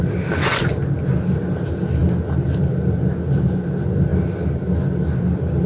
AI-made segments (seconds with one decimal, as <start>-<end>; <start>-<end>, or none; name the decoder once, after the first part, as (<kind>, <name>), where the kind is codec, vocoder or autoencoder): none